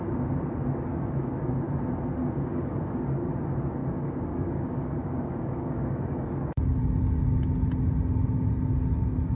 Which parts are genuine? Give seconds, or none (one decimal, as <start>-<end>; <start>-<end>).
0.0-0.9; 1.6-2.2; 3.3-3.8; 6.8-9.3